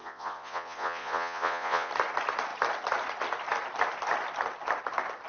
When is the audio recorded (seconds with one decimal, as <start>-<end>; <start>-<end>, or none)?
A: 1.9-5.3